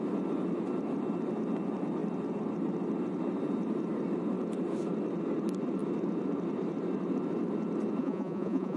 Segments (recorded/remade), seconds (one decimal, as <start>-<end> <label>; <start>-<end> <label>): 0.0-8.0 recorded; 8.0-8.8 remade